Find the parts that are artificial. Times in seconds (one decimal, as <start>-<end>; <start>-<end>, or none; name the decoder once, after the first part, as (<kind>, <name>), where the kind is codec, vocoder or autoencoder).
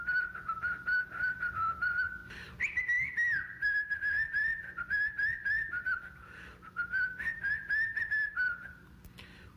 none